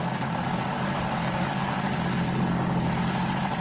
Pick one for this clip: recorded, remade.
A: recorded